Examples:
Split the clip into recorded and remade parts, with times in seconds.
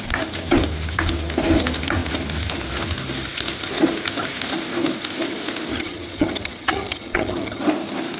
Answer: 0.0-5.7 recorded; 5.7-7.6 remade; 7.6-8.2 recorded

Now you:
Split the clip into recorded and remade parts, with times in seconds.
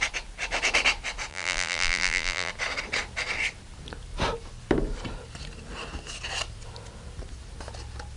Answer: 0.0-1.3 recorded; 1.3-2.5 remade; 2.5-8.2 recorded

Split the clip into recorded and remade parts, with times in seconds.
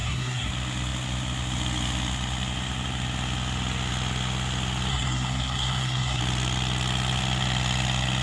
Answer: 0.0-0.5 remade; 0.5-4.9 recorded; 4.9-6.2 remade; 6.2-8.2 recorded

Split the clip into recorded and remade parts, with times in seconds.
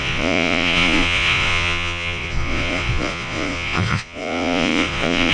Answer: 0.0-5.3 remade